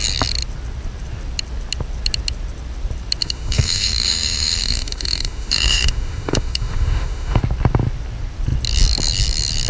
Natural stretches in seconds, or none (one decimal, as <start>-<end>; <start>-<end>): 0.0-3.2; 7.4-9.7